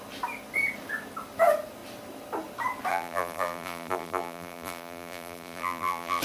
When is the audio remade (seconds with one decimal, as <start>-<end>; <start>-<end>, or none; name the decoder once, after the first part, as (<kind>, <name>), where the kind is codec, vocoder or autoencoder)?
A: 2.9-6.2 (vocoder, BigVGAN v2)